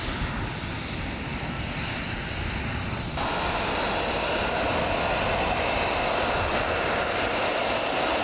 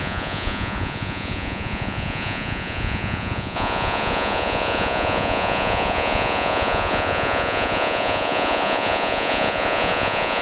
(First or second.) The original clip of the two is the first